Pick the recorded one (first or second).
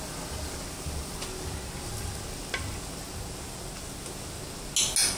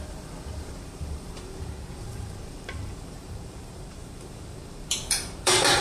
first